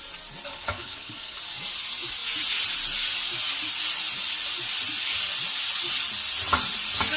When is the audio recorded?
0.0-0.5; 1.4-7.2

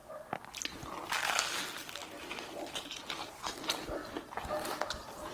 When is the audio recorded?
0.0-5.3

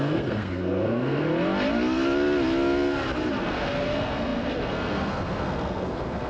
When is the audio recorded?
1.3-3.4

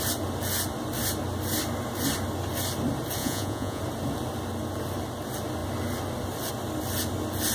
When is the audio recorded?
0.0-3.2; 3.8-7.5